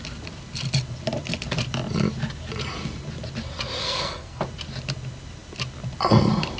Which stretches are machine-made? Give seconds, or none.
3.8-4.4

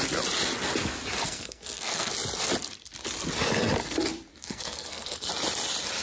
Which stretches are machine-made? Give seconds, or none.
1.2-2.1; 4.3-5.3

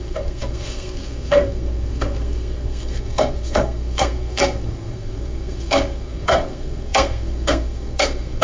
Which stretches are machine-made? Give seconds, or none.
0.0-8.4

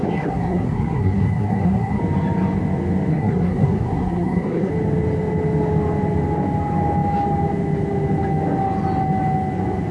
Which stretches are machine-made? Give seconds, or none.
0.0-2.0; 3.1-4.7

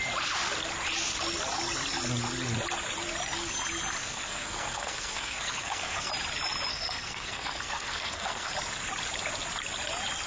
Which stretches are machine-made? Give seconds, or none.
4.0-6.1; 6.7-8.5